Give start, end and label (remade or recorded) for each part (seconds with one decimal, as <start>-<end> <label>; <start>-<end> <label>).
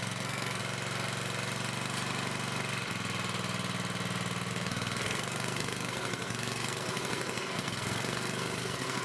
0.0-0.6 remade; 0.6-4.5 recorded; 4.5-9.0 remade